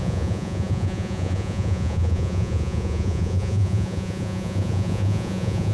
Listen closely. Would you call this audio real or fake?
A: fake